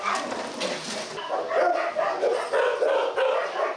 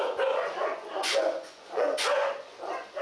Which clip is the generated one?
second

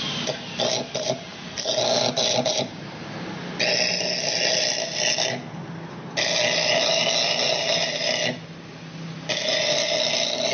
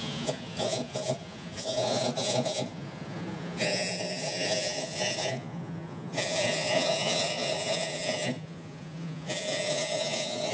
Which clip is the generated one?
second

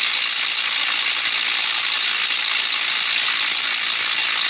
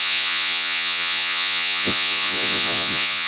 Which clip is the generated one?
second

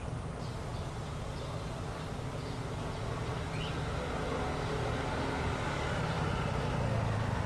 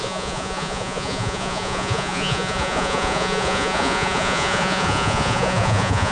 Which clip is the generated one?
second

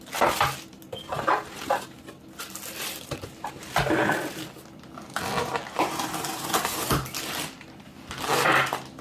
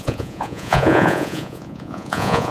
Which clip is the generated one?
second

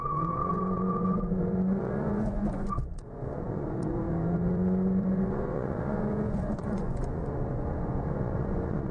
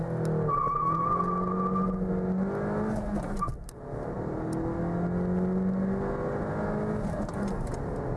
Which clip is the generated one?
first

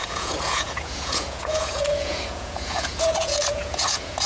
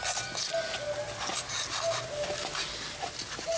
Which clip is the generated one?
first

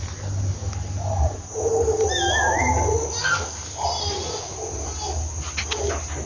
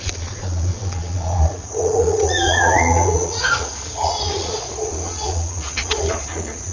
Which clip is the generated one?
second